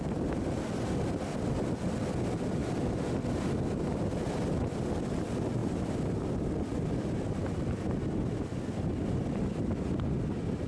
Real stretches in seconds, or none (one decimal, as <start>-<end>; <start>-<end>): 0.0-2.6; 4.0-5.6; 6.9-10.7